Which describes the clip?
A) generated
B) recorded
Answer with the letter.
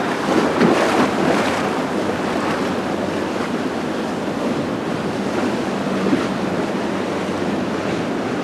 B